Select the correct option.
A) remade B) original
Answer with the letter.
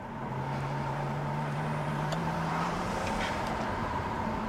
A